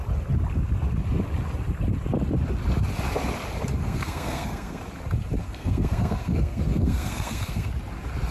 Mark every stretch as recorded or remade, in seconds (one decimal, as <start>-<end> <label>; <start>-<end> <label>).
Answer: 0.0-3.8 recorded; 3.8-4.8 remade; 4.8-5.4 recorded; 5.4-7.7 remade; 7.7-8.3 recorded